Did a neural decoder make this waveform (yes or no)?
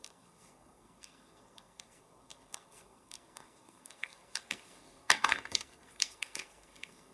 yes